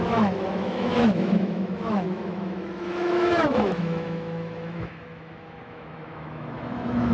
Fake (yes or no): yes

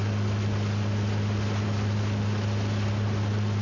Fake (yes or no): no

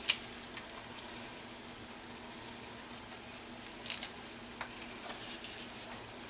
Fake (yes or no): no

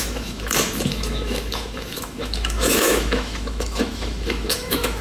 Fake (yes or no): yes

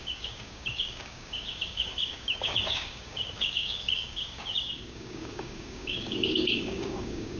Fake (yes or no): yes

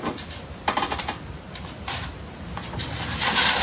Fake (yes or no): no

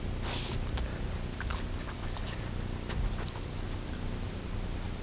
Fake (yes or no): no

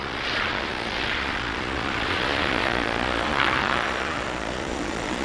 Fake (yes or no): yes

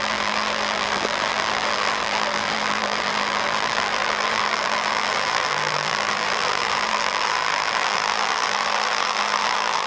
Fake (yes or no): yes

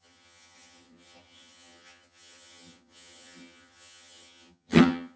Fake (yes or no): yes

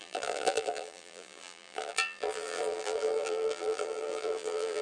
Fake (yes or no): yes